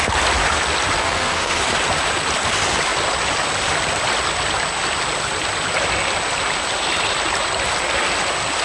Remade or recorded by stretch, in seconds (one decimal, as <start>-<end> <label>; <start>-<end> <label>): 0.0-1.0 recorded; 1.0-1.6 remade; 1.6-8.6 recorded